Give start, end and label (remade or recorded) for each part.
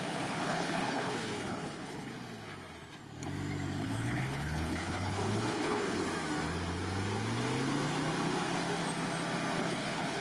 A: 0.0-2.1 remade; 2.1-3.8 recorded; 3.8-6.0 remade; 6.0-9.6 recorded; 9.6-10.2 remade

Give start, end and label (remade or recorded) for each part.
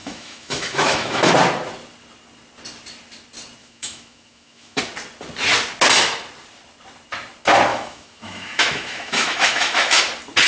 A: 0.0-1.3 remade; 1.3-3.6 recorded; 3.6-4.8 remade; 4.8-7.7 recorded; 7.7-10.0 remade; 10.0-10.5 recorded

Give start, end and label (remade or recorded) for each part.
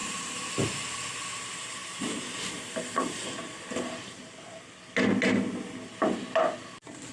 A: 0.0-0.5 remade; 0.5-1.8 recorded; 1.8-4.4 remade; 4.4-7.1 recorded